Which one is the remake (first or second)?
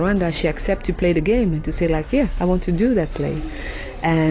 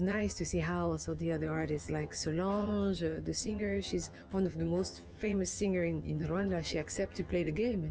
second